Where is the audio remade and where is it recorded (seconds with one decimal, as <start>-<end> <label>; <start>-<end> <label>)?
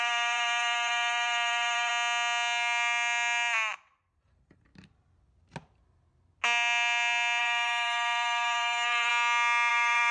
0.0-1.9 remade; 1.9-4.1 recorded; 4.1-4.7 remade; 4.7-7.4 recorded; 7.4-9.1 remade; 9.1-9.7 recorded; 9.7-10.1 remade